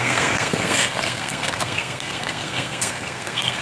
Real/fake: fake